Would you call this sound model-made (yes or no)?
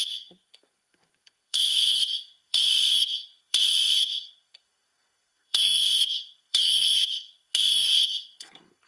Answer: yes